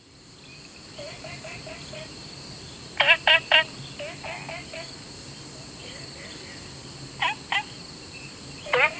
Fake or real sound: real